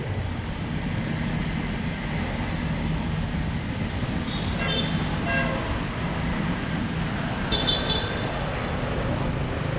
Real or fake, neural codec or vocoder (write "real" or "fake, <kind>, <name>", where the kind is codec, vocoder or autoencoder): real